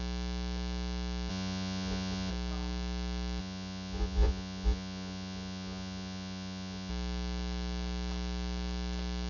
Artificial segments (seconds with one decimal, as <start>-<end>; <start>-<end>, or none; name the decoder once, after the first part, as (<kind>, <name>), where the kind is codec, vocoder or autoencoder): 1.3-2.3 (vocoder, Vocos); 3.4-6.9